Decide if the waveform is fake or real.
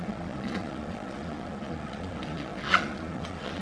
fake